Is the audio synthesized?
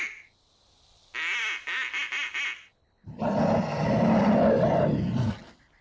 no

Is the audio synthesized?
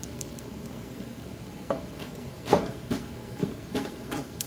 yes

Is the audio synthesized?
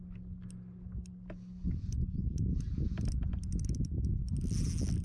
no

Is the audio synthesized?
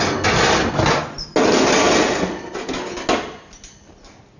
no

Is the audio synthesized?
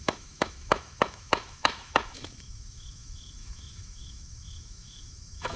yes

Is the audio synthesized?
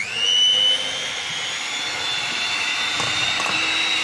no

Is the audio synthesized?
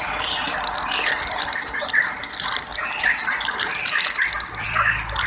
no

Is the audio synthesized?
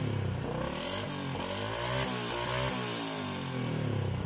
no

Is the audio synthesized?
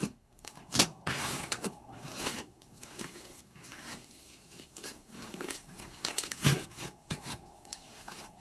yes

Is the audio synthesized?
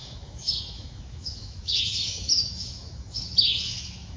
yes